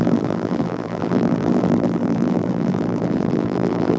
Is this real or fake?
fake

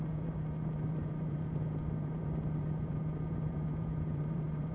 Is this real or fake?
fake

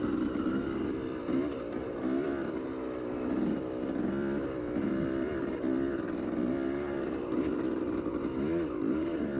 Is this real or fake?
fake